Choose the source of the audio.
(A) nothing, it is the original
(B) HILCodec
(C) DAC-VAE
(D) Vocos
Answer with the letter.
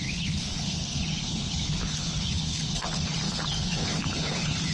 B